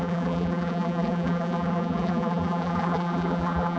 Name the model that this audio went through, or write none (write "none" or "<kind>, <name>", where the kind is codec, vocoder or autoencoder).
vocoder, BigVGAN v2